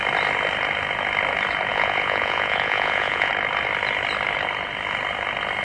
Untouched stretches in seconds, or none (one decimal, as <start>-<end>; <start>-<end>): 0.0-1.7; 3.3-5.6